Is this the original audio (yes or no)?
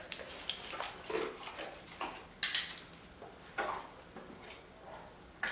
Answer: yes